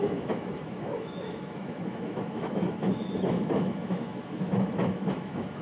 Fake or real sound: fake